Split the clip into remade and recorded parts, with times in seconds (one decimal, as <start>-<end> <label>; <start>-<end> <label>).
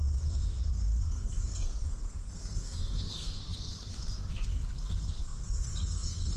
0.0-6.4 remade